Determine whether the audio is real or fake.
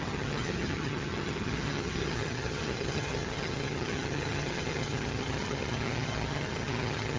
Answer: fake